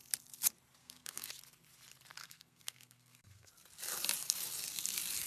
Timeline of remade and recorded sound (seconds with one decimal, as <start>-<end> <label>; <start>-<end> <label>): 0.0-0.8 recorded; 0.8-1.3 remade; 1.3-2.2 recorded; 2.2-3.5 remade; 3.5-5.3 recorded